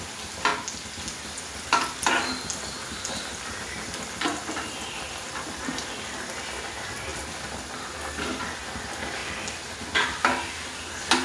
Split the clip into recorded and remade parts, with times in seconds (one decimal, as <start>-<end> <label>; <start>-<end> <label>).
0.0-7.1 recorded; 7.1-8.4 remade; 8.4-11.2 recorded